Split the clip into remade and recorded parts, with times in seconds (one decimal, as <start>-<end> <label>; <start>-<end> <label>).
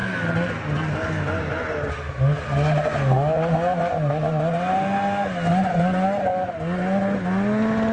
0.0-7.9 recorded